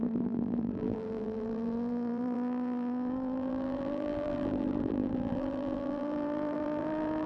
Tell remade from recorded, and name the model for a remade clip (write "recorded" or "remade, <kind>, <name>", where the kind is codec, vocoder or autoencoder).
remade, vocoder, BigVGAN v2